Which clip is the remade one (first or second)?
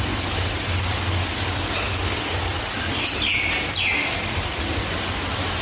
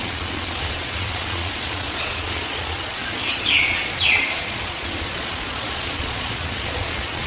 second